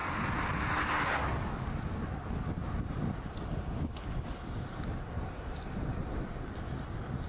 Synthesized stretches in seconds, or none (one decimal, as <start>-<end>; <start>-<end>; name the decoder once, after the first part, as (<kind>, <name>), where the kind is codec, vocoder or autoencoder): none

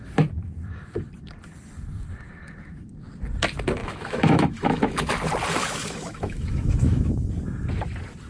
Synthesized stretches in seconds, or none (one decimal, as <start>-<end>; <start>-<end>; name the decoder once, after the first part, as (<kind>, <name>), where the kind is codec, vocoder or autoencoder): 3.8-5.1 (autoencoder, DAC-VAE); 5.6-7.3

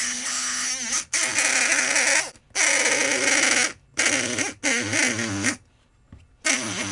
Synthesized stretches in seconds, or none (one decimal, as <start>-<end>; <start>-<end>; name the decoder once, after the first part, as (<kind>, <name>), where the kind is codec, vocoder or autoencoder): 0.0-0.7 (codec, HILCodec)

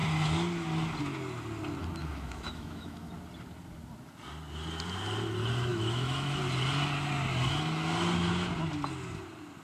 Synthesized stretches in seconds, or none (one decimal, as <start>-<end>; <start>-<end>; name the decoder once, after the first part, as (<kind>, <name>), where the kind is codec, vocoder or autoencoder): 2.0-3.1 (autoencoder, DAC-VAE); 5.7-6.4